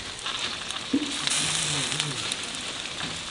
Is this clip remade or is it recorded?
recorded